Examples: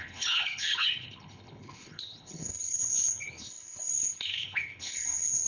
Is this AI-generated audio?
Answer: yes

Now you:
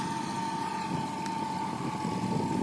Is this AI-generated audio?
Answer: no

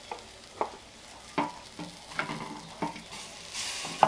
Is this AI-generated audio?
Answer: no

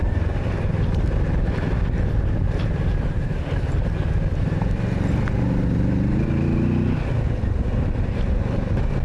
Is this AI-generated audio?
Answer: no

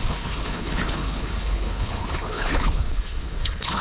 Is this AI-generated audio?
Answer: yes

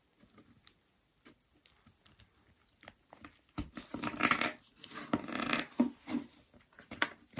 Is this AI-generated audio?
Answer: no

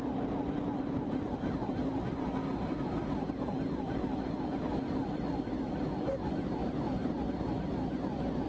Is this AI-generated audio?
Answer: no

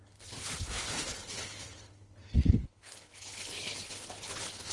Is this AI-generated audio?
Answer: yes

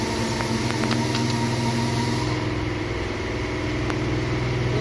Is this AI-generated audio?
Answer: no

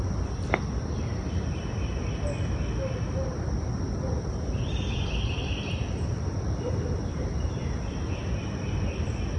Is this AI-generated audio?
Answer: no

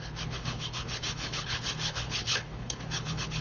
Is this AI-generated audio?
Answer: yes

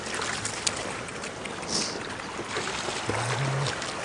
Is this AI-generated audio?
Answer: no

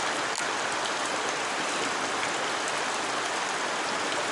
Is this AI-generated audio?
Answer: no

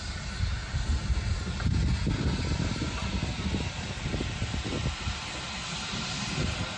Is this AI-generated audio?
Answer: no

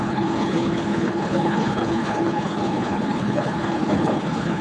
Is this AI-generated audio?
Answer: yes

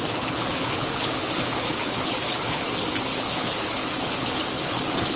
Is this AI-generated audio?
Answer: yes